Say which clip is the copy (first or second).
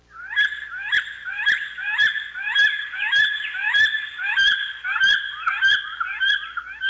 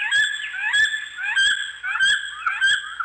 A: first